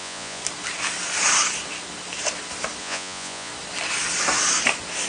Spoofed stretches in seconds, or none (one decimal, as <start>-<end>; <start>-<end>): 0.0-0.4; 2.8-3.5